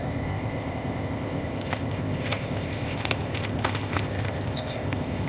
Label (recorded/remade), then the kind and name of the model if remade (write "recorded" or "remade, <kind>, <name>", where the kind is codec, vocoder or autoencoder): remade, codec, ZipCodec